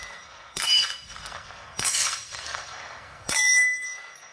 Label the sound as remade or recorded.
remade